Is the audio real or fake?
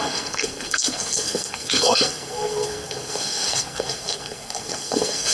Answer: fake